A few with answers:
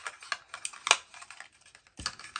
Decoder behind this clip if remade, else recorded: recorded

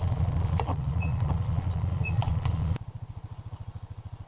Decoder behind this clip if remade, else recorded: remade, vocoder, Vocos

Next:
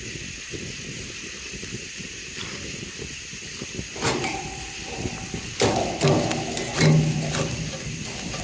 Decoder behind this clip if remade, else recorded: recorded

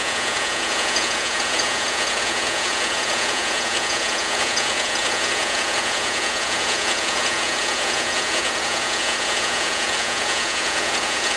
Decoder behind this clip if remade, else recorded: remade, vocoder, Vocos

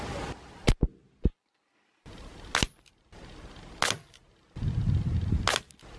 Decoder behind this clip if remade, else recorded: recorded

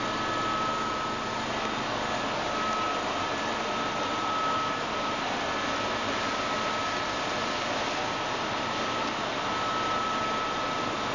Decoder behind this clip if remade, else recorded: recorded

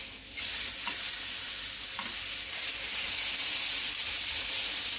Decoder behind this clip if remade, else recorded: recorded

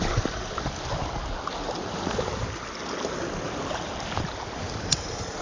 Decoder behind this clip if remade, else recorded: recorded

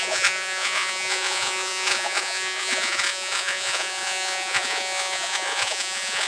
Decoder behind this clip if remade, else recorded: remade, vocoder, Vocos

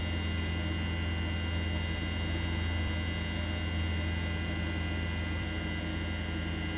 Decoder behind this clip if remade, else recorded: recorded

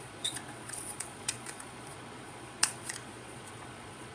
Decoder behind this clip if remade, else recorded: remade, vocoder, Vocos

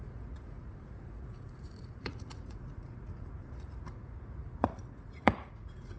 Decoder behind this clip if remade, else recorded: remade, vocoder, Vocos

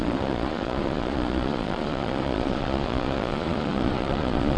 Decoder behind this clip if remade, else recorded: remade, vocoder, Vocos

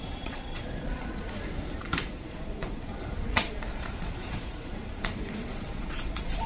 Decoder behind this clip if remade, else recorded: remade, vocoder, Vocos